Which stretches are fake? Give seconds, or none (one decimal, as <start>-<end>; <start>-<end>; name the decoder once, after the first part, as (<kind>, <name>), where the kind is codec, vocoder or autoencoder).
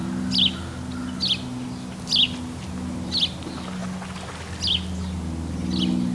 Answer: none